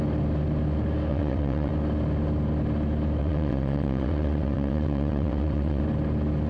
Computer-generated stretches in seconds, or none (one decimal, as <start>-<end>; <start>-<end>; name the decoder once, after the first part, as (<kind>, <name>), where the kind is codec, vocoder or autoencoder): 1.1-1.7 (vocoder, WaveNeXt); 3.2-5.8